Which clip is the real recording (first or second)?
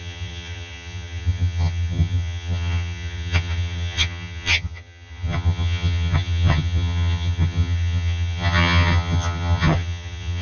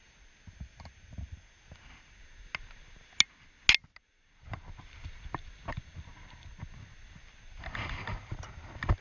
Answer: second